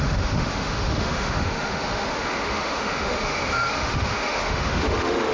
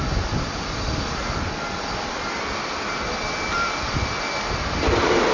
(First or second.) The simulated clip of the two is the first